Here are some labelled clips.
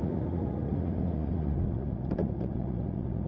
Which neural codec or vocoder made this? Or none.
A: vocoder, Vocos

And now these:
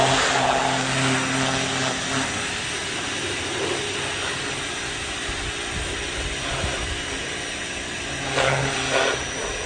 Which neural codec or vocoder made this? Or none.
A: none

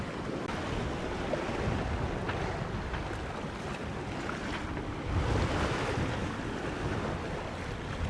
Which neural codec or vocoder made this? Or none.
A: none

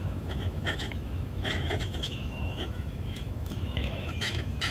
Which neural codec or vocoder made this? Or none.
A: autoencoder, DAC-VAE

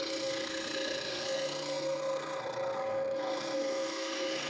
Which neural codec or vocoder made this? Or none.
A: codec, SNAC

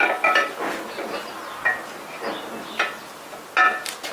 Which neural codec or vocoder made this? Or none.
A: none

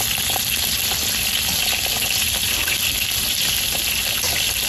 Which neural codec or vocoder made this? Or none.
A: none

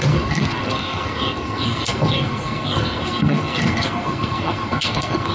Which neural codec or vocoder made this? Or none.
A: codec, SNAC